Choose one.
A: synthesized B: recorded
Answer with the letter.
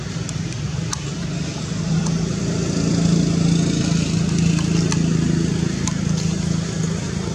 B